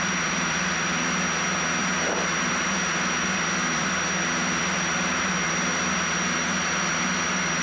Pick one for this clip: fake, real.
fake